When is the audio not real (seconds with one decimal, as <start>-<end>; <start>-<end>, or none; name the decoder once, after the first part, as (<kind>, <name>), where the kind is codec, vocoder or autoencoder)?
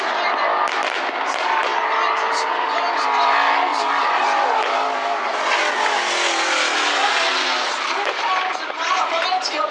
none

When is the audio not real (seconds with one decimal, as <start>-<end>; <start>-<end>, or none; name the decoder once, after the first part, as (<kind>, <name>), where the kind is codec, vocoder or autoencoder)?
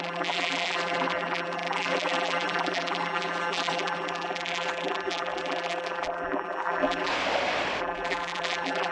0.0-7.1 (vocoder, BigVGAN v2); 7.8-8.9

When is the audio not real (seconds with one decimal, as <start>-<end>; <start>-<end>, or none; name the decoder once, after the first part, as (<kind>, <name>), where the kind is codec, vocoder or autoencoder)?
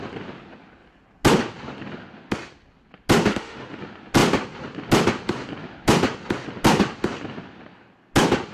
3.3-3.8 (autoencoder, DAC-VAE)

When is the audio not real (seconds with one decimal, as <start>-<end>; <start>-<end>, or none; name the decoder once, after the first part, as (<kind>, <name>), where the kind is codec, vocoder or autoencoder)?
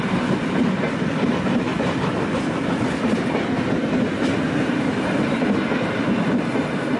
none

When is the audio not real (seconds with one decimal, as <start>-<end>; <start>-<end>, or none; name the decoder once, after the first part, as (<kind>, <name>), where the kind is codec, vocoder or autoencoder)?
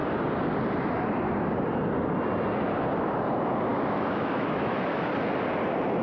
3.7-5.1 (autoencoder, DAC-VAE)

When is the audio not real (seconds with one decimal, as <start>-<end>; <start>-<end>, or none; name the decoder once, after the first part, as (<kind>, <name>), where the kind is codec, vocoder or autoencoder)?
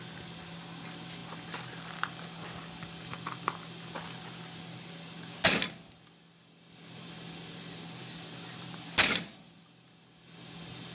none